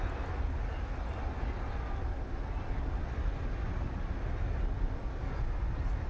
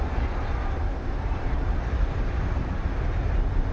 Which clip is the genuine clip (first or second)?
first